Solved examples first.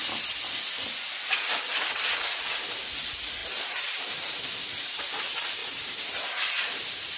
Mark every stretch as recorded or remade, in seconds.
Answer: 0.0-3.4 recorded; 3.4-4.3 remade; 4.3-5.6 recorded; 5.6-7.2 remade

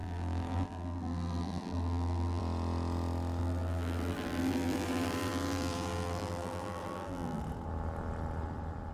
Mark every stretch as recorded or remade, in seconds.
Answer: 0.0-2.4 remade; 2.4-3.4 recorded; 3.4-7.4 remade; 7.4-8.9 recorded